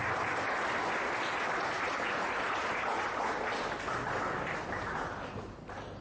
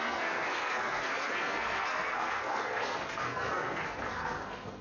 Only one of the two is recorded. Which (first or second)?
first